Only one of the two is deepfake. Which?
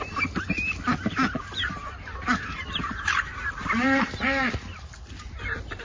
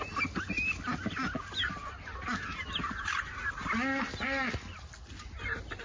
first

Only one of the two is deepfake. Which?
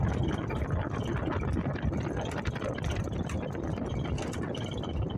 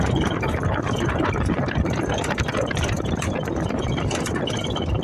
second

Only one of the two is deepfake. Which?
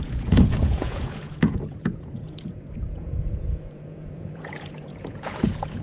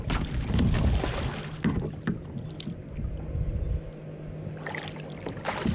first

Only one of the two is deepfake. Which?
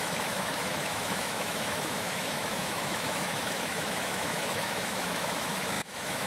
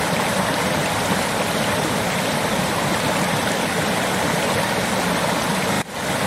first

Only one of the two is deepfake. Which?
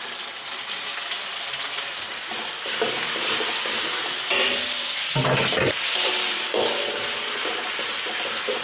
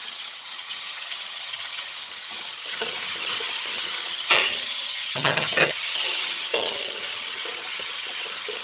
second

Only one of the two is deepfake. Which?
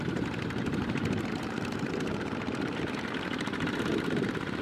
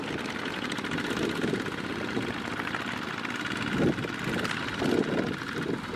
first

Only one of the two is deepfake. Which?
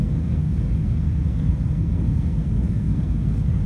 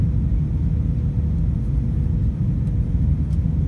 first